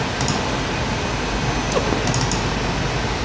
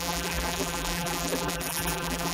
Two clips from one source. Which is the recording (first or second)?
first